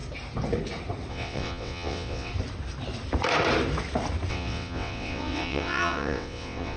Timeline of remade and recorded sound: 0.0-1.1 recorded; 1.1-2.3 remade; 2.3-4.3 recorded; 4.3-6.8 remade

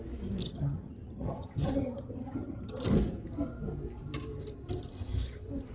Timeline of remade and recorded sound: 0.0-0.4 recorded; 0.4-2.8 remade; 2.8-5.7 recorded

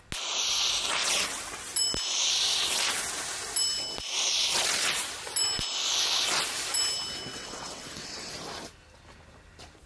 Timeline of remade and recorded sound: 0.0-7.3 recorded; 7.3-8.3 remade; 8.3-9.9 recorded

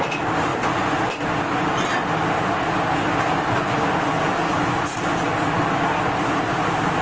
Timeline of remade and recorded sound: 0.0-0.5 remade; 0.5-3.7 recorded; 3.7-7.0 remade

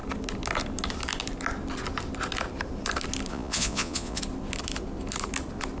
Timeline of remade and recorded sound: 0.0-3.3 recorded; 3.3-4.2 remade; 4.2-5.8 recorded

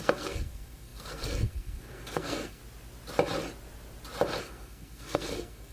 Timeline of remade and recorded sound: 0.0-2.6 remade; 2.6-4.4 recorded; 4.4-5.7 remade

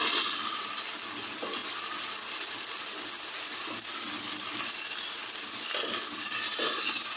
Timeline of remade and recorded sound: 0.0-7.2 recorded

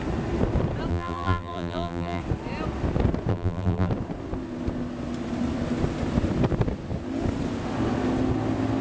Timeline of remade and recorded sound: 0.0-0.9 recorded; 0.9-2.2 remade; 2.2-3.3 recorded; 3.3-3.9 remade; 3.9-8.8 recorded